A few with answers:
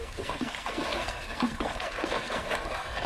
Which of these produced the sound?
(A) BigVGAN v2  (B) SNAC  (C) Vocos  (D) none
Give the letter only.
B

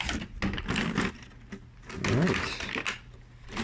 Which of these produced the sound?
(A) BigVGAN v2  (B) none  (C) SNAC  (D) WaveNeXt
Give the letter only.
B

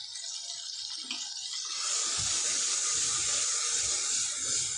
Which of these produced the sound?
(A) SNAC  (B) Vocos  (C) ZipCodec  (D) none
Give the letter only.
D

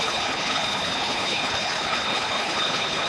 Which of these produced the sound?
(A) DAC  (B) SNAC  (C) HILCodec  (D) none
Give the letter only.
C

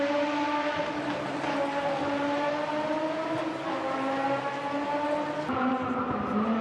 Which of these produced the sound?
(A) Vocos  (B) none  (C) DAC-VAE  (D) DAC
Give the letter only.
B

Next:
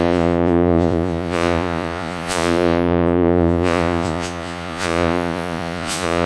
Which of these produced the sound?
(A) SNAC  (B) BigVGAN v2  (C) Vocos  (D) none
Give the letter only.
C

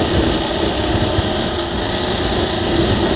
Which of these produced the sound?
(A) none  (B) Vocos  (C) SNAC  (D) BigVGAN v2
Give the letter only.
A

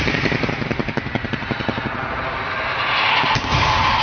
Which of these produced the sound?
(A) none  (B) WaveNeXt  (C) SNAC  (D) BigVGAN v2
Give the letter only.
A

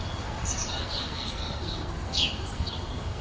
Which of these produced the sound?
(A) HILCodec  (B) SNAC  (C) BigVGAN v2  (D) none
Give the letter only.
B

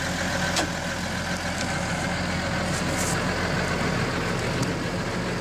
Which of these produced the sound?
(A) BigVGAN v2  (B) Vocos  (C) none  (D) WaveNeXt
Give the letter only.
C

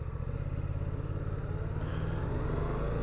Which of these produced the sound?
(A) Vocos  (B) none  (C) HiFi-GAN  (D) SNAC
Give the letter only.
B